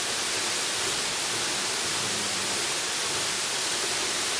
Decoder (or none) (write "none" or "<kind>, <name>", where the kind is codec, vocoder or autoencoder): none